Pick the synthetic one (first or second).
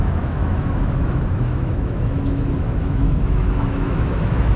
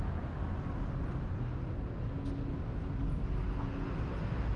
first